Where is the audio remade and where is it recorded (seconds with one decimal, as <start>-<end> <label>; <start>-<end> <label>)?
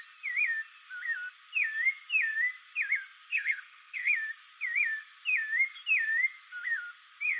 0.0-3.3 recorded; 3.3-4.1 remade; 4.1-7.4 recorded